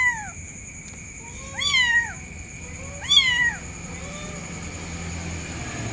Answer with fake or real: real